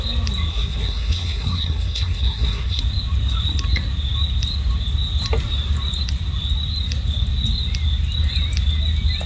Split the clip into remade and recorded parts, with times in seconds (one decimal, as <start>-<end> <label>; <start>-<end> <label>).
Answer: 0.0-0.5 recorded; 0.5-2.8 remade; 2.8-9.3 recorded